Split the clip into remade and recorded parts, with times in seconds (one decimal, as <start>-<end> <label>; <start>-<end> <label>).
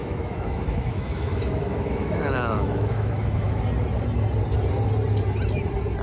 0.0-3.6 remade; 3.6-6.0 recorded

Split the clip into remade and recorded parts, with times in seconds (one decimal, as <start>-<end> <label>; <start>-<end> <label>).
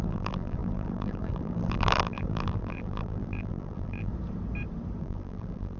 0.0-4.1 remade; 4.1-5.0 recorded; 5.0-5.8 remade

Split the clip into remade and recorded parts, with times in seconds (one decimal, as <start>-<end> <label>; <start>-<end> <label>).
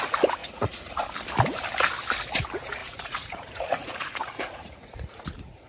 0.0-0.4 recorded; 0.4-1.0 remade; 1.0-2.8 recorded; 2.8-5.7 remade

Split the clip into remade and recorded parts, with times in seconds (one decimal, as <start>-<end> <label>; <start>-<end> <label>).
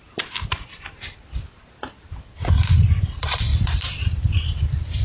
0.0-0.7 remade; 0.7-3.0 recorded; 3.0-5.0 remade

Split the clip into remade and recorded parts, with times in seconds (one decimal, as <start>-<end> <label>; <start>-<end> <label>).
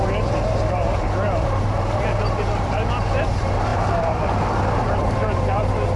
0.0-6.0 remade